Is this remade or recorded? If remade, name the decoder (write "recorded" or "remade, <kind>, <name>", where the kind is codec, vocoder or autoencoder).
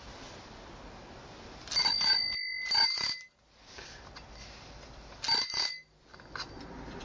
recorded